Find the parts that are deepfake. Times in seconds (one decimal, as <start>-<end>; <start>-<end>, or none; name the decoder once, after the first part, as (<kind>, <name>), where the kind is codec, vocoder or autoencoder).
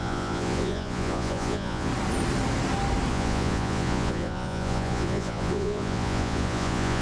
0.0-1.9 (vocoder, Vocos); 3.1-7.0